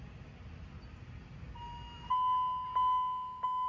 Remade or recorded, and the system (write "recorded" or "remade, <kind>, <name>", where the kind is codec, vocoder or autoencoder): recorded